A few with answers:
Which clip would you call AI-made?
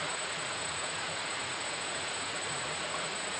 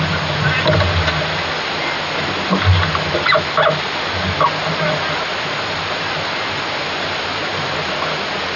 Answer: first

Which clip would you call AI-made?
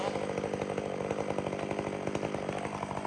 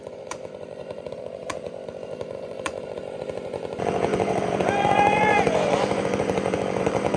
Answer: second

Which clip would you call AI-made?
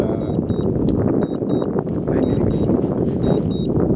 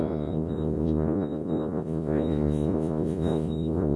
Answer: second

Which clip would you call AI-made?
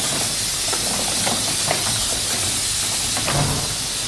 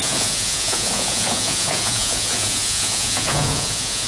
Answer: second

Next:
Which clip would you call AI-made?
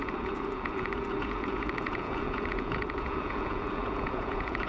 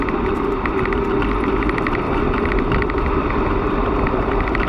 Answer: first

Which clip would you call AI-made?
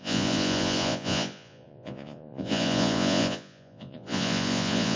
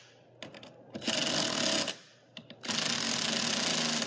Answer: first